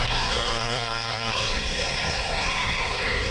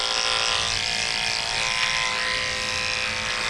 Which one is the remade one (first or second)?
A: first